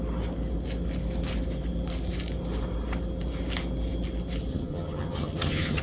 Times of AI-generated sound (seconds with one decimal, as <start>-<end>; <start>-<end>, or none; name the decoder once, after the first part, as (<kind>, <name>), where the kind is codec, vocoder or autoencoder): 4.5-5.8 (vocoder, HiFi-GAN)